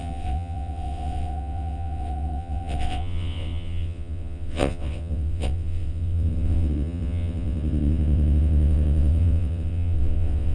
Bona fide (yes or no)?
no